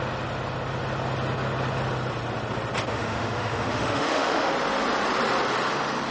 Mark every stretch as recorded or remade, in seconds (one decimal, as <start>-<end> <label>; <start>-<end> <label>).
0.0-2.9 recorded; 2.9-4.5 remade; 4.5-6.1 recorded